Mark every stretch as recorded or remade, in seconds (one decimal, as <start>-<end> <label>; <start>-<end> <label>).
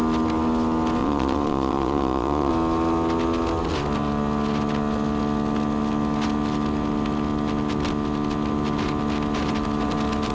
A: 0.0-1.0 recorded; 1.0-2.5 remade; 2.5-10.3 recorded